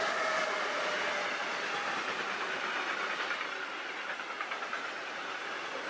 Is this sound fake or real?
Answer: real